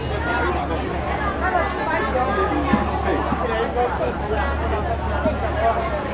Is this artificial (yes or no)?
no